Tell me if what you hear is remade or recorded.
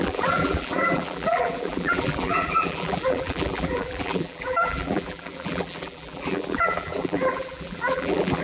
remade